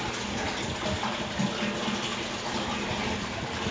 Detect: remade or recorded remade